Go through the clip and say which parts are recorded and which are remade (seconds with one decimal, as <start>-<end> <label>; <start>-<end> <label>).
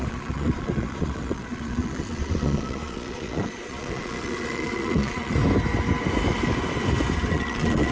0.0-5.4 remade; 5.4-7.3 recorded; 7.3-7.9 remade